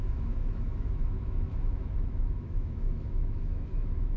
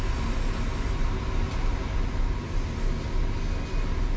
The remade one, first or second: first